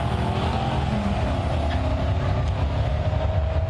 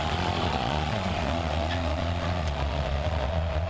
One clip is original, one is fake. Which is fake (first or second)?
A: second